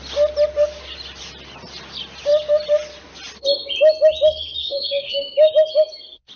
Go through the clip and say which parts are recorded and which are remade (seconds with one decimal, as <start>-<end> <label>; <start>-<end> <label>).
0.0-4.6 recorded; 4.6-5.5 remade; 5.5-6.4 recorded